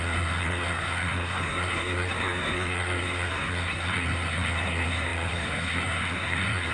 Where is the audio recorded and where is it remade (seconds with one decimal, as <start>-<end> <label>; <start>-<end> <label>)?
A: 0.0-6.7 remade